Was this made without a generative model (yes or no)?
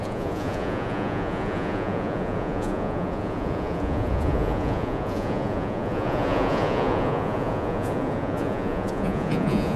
no